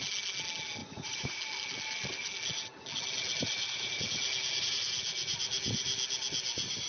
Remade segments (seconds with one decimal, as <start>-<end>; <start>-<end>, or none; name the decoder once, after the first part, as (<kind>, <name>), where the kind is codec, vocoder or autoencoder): 0.8-1.4 (vocoder, Vocos)